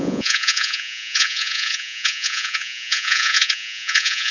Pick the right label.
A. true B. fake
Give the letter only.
B